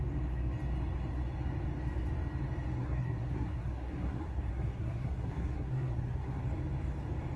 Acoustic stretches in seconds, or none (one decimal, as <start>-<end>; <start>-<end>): 0.0-2.8; 6.4-7.4